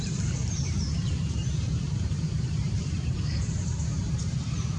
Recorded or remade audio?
remade